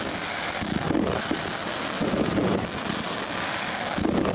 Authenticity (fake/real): real